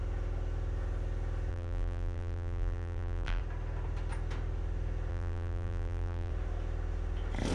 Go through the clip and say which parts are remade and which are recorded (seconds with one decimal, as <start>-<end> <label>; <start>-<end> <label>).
0.0-1.5 recorded; 1.5-3.4 remade; 3.4-5.1 recorded; 5.1-6.3 remade; 6.3-7.5 recorded